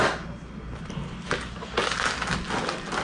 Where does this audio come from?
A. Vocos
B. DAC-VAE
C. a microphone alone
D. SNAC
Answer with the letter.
C